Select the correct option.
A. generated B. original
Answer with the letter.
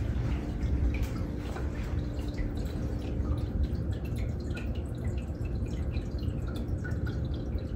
B